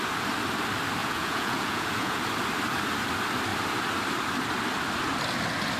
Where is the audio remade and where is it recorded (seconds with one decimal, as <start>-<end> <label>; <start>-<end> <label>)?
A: 0.0-1.0 recorded; 1.0-2.2 remade; 2.2-5.8 recorded

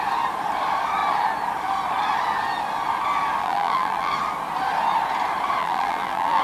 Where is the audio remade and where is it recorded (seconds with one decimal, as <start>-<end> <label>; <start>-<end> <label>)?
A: 0.0-3.4 recorded; 3.4-4.1 remade; 4.1-5.6 recorded; 5.6-6.4 remade

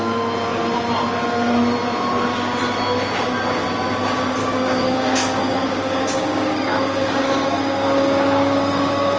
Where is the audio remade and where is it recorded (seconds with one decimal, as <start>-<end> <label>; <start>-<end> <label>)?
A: 0.0-4.4 recorded; 4.4-9.2 remade

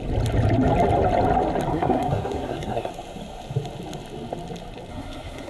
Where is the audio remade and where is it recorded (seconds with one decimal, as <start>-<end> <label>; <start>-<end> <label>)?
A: 0.0-1.7 recorded; 1.7-2.9 remade; 2.9-4.9 recorded; 4.9-5.5 remade

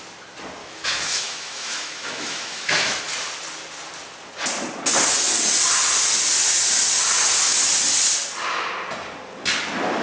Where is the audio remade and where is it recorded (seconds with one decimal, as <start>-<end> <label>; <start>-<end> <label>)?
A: 0.0-0.6 recorded; 0.6-3.0 remade; 3.0-10.0 recorded

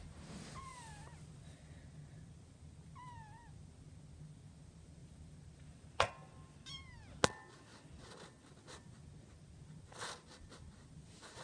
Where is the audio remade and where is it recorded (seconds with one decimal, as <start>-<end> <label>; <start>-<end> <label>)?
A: 0.0-5.0 recorded; 5.0-6.1 remade; 6.1-11.4 recorded